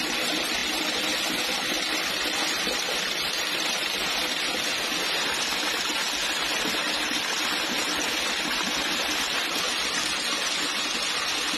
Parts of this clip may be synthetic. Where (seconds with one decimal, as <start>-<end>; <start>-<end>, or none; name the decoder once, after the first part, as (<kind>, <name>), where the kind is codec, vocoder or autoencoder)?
none